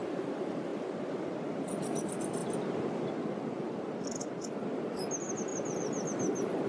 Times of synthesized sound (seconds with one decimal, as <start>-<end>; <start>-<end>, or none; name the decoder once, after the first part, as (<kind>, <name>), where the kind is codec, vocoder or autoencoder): none